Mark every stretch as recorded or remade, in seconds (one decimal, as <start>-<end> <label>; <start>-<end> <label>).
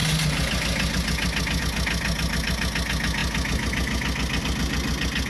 0.0-5.3 recorded